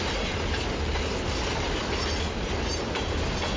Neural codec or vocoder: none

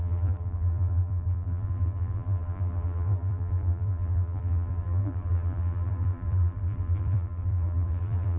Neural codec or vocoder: vocoder, BigVGAN v2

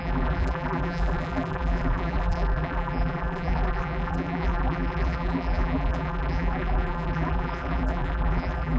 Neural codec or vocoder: vocoder, BigVGAN v2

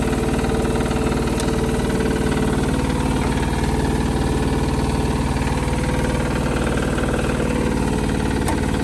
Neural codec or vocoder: none